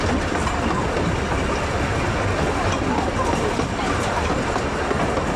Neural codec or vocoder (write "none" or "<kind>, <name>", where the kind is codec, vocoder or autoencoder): none